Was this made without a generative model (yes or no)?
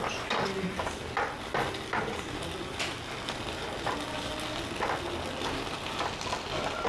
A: yes